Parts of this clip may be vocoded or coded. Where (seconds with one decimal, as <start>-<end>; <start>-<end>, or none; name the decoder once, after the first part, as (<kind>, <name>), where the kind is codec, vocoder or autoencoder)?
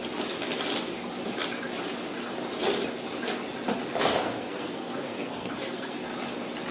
4.2-6.0 (codec, SNAC)